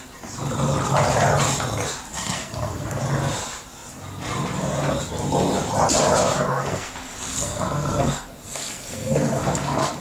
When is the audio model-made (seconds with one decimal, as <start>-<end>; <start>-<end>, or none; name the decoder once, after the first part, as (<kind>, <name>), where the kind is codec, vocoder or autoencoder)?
2.1-3.0 (codec, SNAC); 6.5-10.0